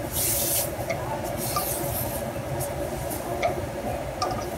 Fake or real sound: real